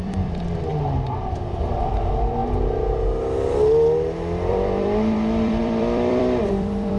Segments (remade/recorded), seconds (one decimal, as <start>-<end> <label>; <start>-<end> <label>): 0.0-0.7 remade; 0.7-1.8 recorded; 1.8-2.4 remade; 2.4-4.5 recorded; 4.5-7.0 remade